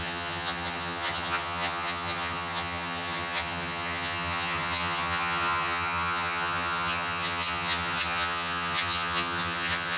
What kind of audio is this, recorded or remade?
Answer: remade